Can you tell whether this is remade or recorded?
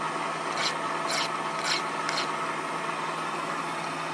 recorded